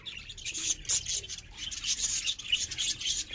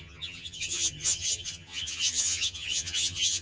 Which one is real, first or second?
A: first